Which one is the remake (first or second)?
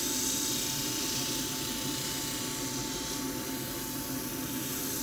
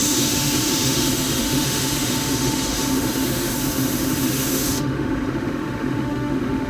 second